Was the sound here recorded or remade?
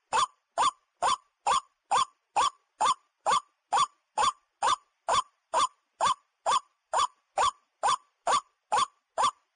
recorded